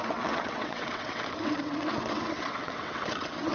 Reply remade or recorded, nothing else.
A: remade